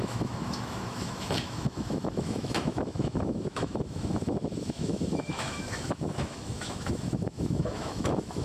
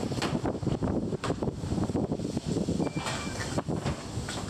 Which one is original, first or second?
second